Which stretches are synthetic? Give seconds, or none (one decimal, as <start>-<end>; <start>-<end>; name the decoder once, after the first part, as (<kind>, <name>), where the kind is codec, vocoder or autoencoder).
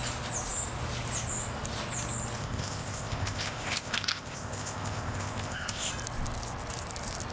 2.4-5.9 (codec, ZipCodec)